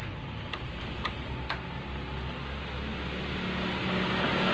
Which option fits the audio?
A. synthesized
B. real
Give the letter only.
B